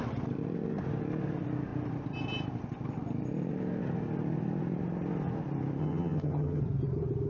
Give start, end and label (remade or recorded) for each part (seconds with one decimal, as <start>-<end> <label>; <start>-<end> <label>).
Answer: 0.0-5.8 recorded; 5.8-6.6 remade; 6.6-7.3 recorded